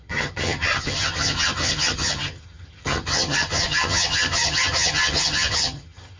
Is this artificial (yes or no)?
yes